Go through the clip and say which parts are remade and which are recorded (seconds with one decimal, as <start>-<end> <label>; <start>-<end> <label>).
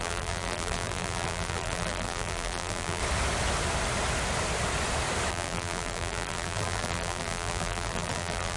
0.0-3.0 remade; 3.0-5.3 recorded; 5.3-8.6 remade